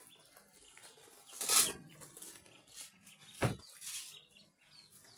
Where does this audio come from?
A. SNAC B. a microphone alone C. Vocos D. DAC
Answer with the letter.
B